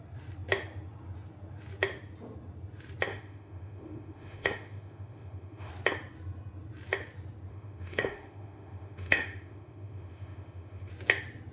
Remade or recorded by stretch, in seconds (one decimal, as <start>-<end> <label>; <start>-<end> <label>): 0.0-3.1 recorded; 3.1-5.7 remade; 5.7-7.5 recorded; 7.5-10.9 remade; 10.9-11.5 recorded

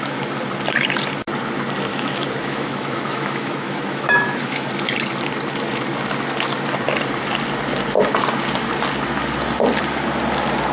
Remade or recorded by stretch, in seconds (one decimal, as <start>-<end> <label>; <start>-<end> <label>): 0.0-1.9 recorded; 1.9-4.7 remade; 4.7-10.7 recorded

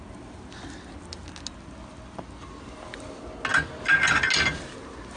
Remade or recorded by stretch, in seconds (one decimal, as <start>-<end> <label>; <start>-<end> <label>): 0.0-5.2 recorded

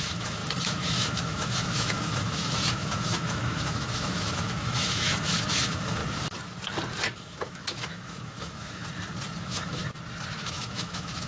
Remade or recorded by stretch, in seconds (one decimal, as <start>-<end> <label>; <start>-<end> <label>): 0.0-6.0 remade; 6.0-7.4 recorded; 7.4-8.8 remade; 8.8-9.4 recorded; 9.4-9.8 remade; 9.8-10.4 recorded; 10.4-11.3 remade

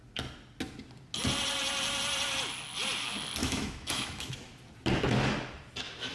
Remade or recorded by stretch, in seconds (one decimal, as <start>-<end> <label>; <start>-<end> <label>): 0.0-3.4 recorded; 3.4-4.3 remade; 4.3-6.1 recorded

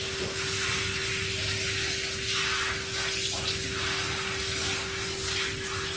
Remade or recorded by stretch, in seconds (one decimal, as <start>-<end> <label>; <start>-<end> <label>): 0.0-6.0 recorded

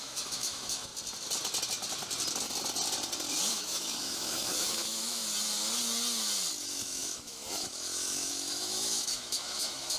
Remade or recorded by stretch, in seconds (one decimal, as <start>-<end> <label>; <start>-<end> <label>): 0.0-0.9 remade; 0.9-3.5 recorded; 3.5-5.2 remade; 5.2-6.6 recorded; 6.6-10.0 remade